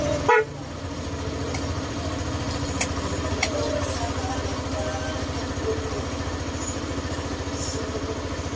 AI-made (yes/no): no